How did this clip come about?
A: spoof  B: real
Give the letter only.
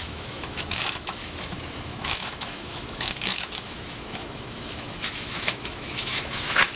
A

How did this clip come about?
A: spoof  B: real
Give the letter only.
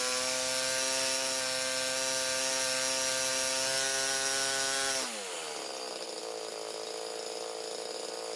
B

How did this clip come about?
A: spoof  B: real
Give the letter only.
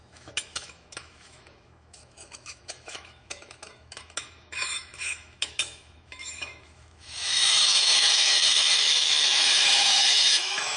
A